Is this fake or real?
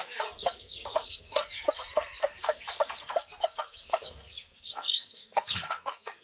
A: fake